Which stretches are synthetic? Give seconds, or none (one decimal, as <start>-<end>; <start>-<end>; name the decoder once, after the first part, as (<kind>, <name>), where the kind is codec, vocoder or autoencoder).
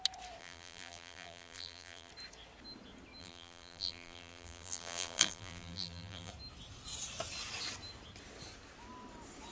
0.4-2.1 (vocoder, BigVGAN v2); 3.2-6.3